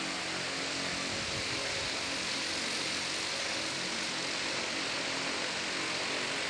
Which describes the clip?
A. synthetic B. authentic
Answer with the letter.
B